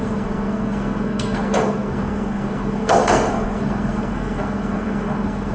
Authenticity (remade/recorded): remade